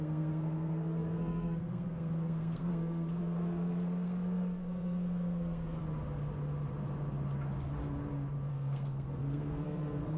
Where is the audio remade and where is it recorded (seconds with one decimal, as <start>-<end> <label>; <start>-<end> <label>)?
0.0-5.8 remade; 5.8-8.5 recorded; 8.5-10.2 remade